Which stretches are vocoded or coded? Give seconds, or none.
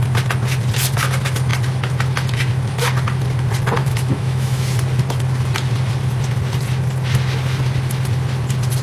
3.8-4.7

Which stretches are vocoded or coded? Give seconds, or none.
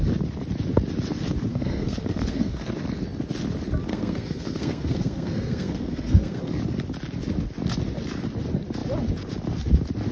1.5-2.7; 3.9-6.6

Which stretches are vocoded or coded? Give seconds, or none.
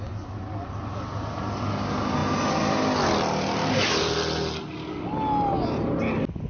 none